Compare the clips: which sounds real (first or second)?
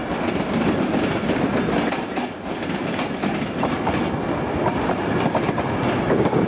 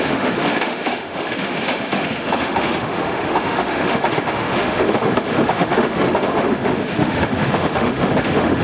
first